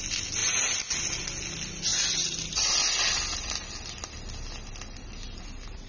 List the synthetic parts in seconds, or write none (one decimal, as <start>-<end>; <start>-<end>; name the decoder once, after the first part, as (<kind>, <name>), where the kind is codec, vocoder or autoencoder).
none